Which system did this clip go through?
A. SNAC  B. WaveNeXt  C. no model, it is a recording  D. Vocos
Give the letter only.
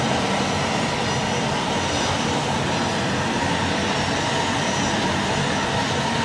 C